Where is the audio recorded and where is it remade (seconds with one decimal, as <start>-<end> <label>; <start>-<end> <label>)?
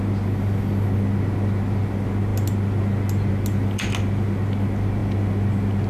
0.0-5.9 recorded